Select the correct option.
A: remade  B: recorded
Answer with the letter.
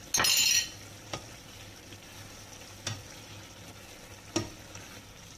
B